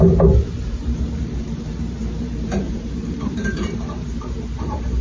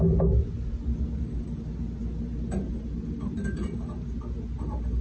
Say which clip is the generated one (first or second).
first